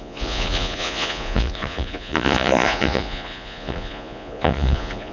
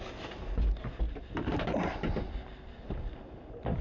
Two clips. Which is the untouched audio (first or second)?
second